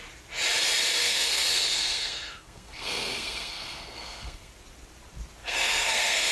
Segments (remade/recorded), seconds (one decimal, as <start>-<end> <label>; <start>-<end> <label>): 0.0-1.0 recorded; 1.0-4.5 remade; 4.5-5.4 recorded; 5.4-6.3 remade